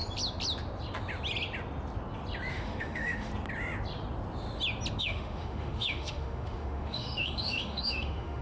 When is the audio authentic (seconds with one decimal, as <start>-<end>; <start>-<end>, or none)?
0.0-2.5; 3.3-5.0